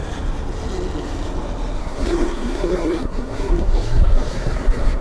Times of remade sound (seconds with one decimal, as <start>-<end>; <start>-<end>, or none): 1.8-5.0